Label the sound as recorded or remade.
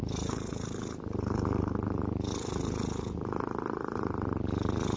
recorded